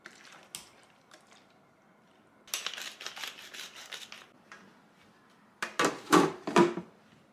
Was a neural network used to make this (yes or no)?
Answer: no